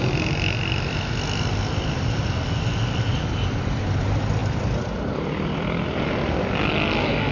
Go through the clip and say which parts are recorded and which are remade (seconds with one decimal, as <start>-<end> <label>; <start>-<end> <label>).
0.0-4.4 recorded; 4.4-6.7 remade; 6.7-7.3 recorded